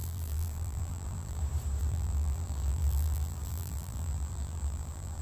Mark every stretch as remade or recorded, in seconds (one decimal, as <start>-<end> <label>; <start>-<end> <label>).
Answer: 0.0-1.4 remade; 1.4-1.8 recorded; 1.8-5.2 remade